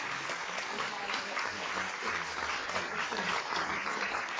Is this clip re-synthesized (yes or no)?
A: yes